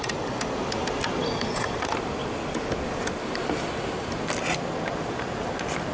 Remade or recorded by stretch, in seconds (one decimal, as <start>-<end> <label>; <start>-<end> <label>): 0.0-5.9 recorded